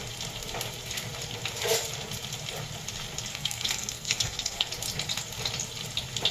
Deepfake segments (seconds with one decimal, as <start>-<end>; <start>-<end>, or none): 3.3-4.7